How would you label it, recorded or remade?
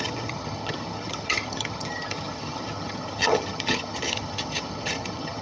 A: remade